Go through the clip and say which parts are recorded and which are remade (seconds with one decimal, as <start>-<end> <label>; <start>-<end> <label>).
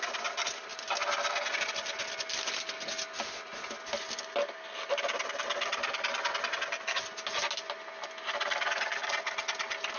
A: 0.0-10.0 recorded